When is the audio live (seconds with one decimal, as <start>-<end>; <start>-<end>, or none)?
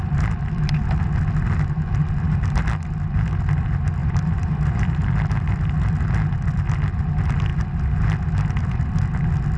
0.0-4.0; 5.0-9.6